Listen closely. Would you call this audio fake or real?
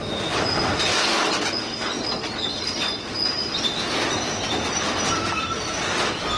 real